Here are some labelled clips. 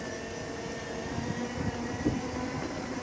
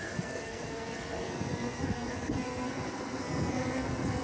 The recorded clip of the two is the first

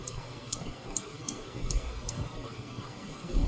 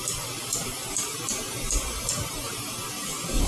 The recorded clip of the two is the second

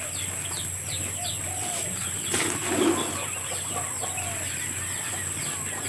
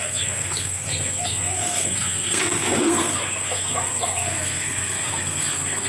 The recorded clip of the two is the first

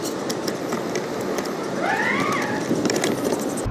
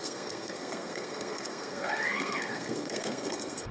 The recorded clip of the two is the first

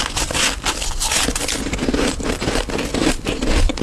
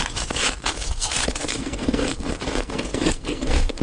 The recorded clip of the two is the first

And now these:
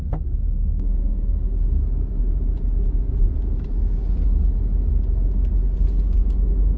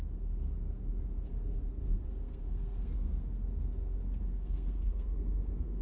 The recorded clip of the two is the first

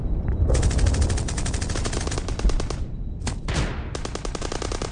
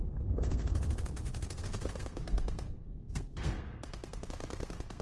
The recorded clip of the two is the first